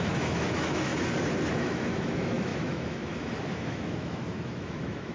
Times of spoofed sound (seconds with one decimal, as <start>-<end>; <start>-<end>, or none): 0.0-0.9; 1.5-5.1